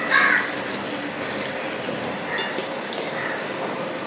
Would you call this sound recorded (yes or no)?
yes